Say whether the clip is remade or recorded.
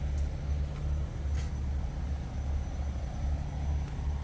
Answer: recorded